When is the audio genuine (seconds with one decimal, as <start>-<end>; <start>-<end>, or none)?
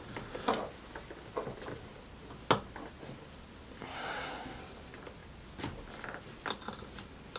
0.0-3.8; 4.6-7.4